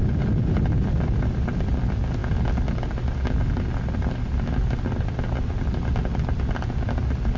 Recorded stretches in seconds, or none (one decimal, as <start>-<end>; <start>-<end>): 0.0-7.4